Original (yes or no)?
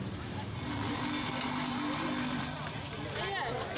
yes